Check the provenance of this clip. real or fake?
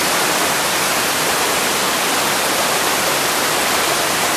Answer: real